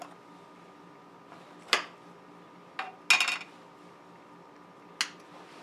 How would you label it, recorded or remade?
recorded